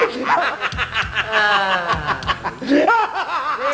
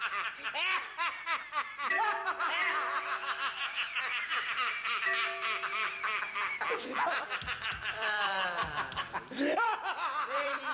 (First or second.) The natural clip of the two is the first